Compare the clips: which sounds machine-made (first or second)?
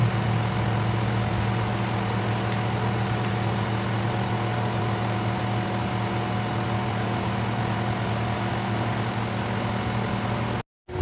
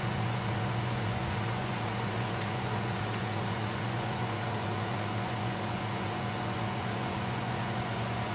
second